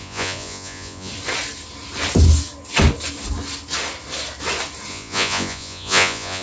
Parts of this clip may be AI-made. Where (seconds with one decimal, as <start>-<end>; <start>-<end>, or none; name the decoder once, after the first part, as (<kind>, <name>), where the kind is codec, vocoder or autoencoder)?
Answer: 0.0-1.1 (vocoder, Vocos); 4.9-6.4